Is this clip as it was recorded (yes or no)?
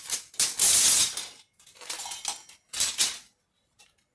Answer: yes